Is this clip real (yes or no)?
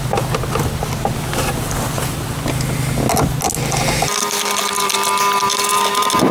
yes